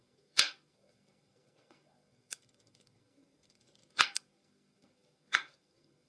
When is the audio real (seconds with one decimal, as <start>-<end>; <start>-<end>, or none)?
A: none